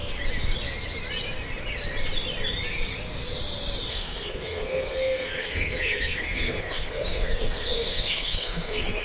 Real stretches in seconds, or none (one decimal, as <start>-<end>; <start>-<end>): 0.0-3.9